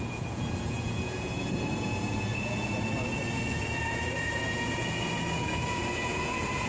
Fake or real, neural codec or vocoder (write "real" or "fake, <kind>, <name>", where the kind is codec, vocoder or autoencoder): fake, vocoder, Vocos